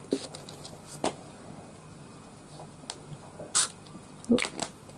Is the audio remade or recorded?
recorded